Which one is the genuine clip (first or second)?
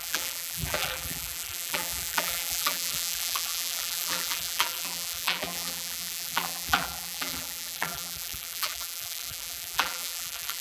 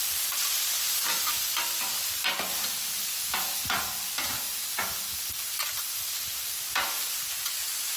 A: second